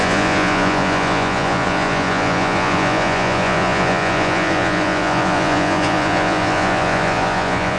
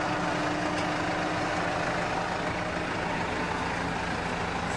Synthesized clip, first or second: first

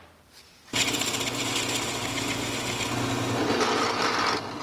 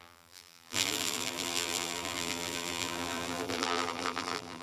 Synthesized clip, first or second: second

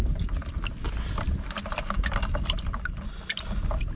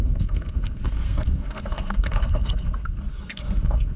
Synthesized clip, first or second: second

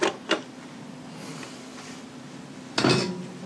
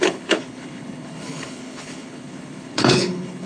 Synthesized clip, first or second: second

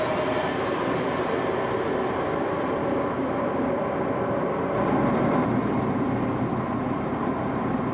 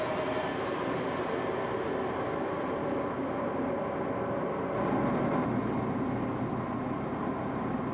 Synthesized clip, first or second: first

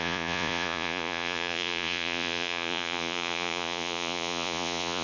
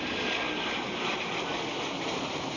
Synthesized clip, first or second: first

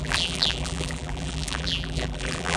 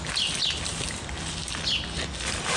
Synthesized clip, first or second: first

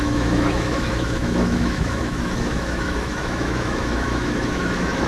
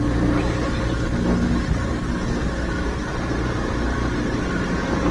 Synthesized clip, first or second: first